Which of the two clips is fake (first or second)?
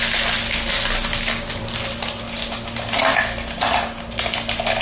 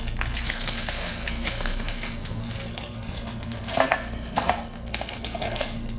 second